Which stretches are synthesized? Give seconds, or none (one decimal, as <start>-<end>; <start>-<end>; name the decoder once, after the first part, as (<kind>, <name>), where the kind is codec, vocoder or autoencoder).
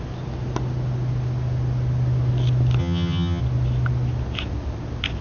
2.8-3.4 (vocoder, HiFi-GAN)